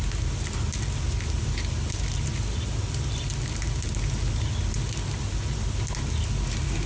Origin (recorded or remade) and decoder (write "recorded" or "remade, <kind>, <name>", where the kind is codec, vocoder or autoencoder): recorded